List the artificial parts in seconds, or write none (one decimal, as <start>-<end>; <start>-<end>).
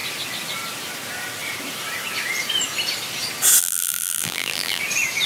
3.6-4.8